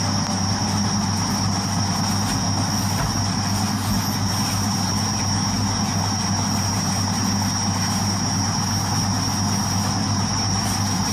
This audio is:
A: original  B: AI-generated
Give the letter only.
A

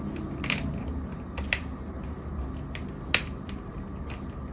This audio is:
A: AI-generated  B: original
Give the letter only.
B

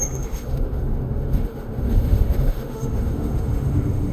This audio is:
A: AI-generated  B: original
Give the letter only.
A